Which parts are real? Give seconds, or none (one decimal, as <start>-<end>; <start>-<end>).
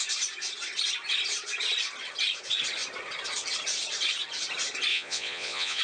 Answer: 0.0-4.9